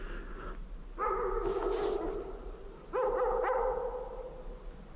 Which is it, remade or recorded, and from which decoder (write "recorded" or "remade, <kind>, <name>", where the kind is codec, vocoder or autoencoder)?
recorded